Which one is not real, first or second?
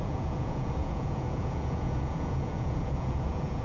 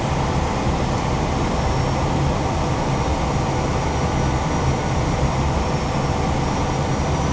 first